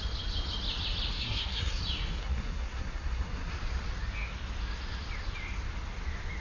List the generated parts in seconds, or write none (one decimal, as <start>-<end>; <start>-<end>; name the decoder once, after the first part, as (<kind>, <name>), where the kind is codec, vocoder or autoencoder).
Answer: 1.1-1.8 (codec, SNAC); 2.2-3.5